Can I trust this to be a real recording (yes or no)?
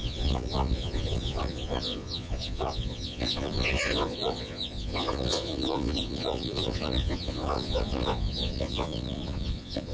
no